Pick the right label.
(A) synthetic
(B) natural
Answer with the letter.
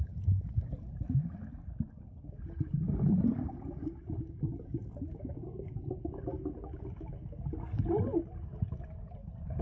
B